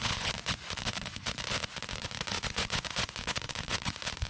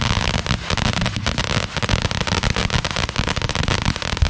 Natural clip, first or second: second